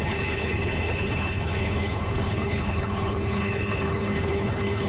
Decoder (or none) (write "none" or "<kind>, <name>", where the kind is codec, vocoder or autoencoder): codec, HILCodec